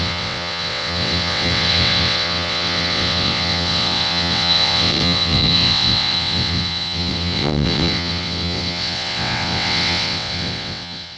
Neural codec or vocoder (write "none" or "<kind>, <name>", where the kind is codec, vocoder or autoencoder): vocoder, WaveNeXt